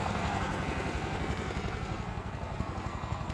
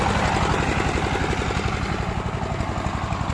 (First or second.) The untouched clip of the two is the second